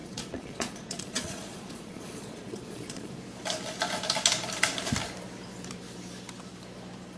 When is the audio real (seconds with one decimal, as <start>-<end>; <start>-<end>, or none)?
3.1-7.2

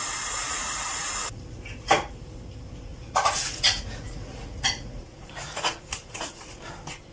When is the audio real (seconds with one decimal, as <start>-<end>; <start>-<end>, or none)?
0.0-0.4; 1.4-2.9; 6.6-7.1

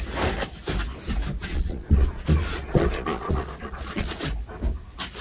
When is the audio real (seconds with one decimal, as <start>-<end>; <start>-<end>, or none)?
0.0-1.4; 4.1-5.2

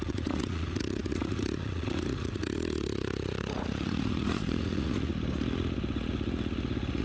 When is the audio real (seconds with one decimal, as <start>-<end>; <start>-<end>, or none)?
5.1-7.0

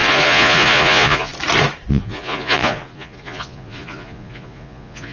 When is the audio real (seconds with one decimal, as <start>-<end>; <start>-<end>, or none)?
1.3-1.9

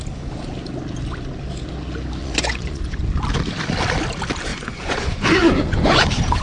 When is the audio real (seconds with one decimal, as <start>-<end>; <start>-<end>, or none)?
0.0-2.2; 3.0-4.5